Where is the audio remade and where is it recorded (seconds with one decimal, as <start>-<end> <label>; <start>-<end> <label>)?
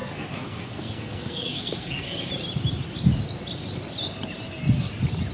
0.0-2.3 remade; 2.3-5.3 recorded